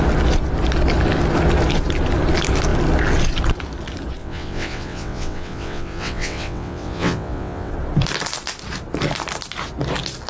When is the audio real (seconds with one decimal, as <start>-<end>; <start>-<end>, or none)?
0.0-4.2; 7.7-10.3